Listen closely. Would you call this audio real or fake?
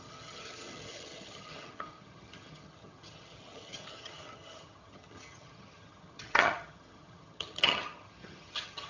fake